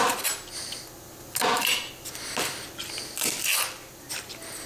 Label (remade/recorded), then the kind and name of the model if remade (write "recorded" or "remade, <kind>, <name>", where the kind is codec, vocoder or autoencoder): recorded